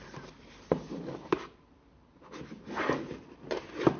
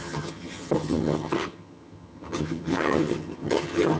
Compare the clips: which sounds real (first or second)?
first